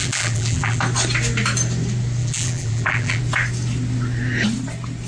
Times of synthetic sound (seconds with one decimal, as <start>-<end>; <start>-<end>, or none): 0.0-0.8; 2.2-3.2